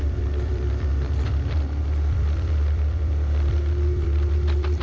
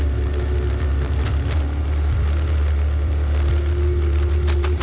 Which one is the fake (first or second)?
first